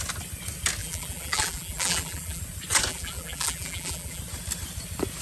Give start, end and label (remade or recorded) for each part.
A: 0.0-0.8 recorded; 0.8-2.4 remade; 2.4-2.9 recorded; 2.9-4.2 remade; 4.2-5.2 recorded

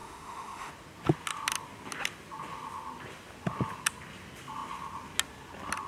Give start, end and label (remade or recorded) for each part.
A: 0.0-0.7 remade; 0.7-5.9 recorded

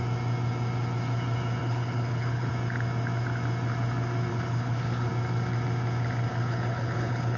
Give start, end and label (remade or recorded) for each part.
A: 0.0-1.6 recorded; 1.6-2.5 remade; 2.5-4.3 recorded; 4.3-5.1 remade; 5.1-6.3 recorded; 6.3-7.4 remade